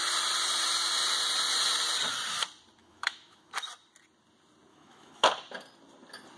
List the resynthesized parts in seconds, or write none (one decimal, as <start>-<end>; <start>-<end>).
2.8-3.5; 4.7-5.3